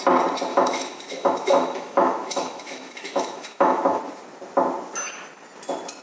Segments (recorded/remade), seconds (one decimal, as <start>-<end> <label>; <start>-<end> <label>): 0.0-0.5 recorded; 0.5-4.0 remade; 4.0-6.0 recorded